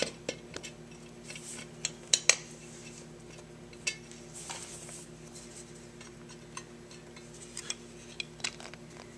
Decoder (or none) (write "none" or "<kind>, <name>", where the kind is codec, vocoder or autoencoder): none